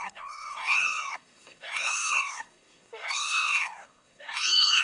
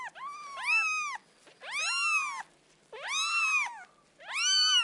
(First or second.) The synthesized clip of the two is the first